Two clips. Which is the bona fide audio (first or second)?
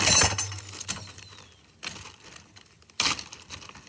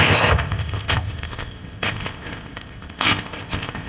first